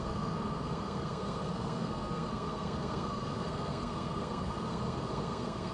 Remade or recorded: remade